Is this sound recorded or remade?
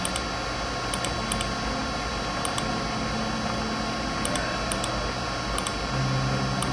recorded